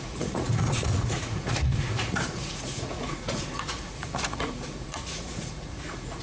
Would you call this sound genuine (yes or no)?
no